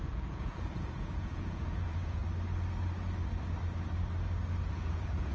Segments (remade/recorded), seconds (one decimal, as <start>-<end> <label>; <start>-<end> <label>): 0.0-2.2 remade; 2.2-4.7 recorded; 4.7-5.3 remade